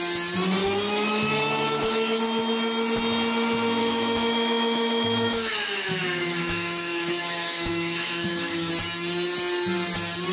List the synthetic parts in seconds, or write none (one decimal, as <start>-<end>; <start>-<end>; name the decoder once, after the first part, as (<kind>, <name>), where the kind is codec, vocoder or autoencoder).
0.6-2.2 (autoencoder, DAC-VAE); 3.8-8.7